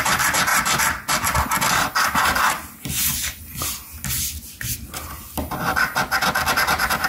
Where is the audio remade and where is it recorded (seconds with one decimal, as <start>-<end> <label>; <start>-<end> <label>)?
0.0-7.1 recorded